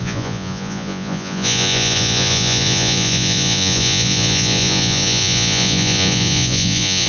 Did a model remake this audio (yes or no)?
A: yes